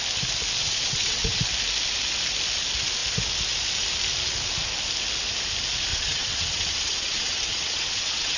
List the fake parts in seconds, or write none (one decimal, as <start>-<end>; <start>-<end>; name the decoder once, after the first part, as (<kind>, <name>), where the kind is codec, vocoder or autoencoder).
0.6-1.4 (vocoder, WaveNeXt); 5.9-8.4